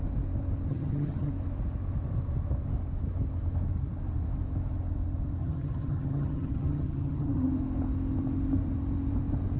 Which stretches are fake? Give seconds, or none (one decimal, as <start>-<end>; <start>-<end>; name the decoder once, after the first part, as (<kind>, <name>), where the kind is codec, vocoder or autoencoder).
0.7-1.3 (vocoder, HiFi-GAN); 5.4-7.5